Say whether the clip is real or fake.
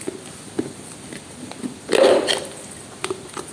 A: real